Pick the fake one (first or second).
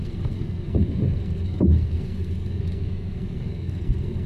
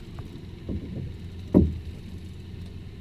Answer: first